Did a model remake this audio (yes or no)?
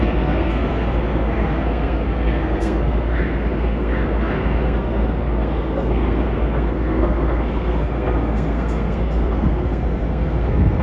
yes